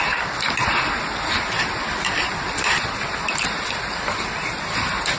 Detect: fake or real real